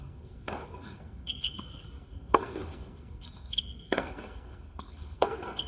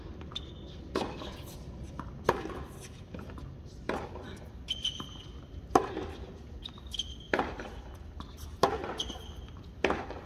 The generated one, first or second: first